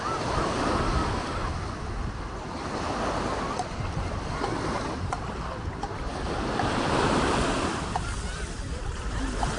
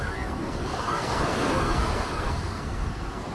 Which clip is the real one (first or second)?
first